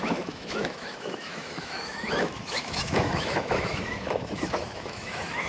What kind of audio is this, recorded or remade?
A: remade